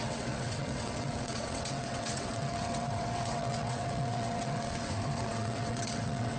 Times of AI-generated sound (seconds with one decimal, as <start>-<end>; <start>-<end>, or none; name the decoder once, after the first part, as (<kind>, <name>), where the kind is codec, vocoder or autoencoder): 0.0-6.4 (vocoder, WaveNeXt)